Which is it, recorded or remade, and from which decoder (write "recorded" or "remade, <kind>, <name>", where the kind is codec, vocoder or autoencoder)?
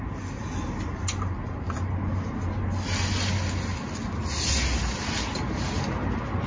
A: recorded